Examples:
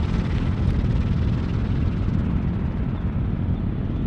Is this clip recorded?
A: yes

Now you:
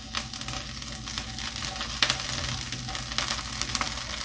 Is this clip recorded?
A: yes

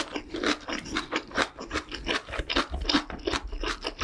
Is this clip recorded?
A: yes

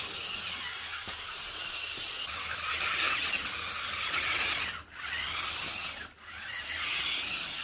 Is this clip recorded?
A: yes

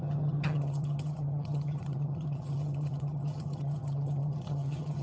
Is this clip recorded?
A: no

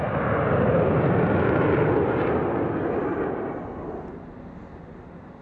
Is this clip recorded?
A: yes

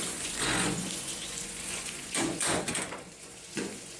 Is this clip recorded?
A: no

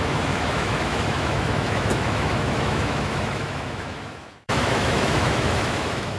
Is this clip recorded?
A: no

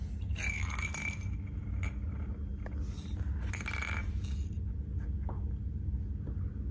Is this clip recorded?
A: yes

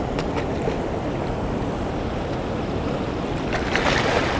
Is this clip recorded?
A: yes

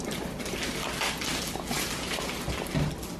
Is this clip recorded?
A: yes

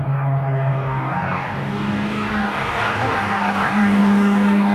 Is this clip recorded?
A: no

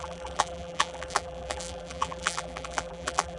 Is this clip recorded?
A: no